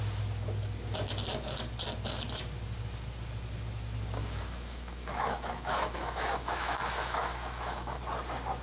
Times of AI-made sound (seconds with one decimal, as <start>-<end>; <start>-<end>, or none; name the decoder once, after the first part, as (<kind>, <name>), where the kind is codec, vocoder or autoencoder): 4.2-8.0 (autoencoder, DAC-VAE)